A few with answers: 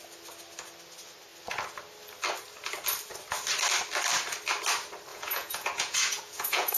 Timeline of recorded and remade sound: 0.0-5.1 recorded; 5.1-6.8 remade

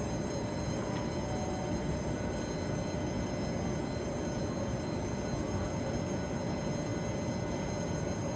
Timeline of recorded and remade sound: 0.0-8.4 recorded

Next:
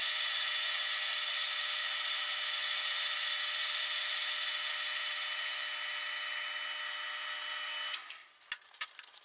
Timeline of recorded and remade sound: 0.0-1.1 remade; 1.1-9.2 recorded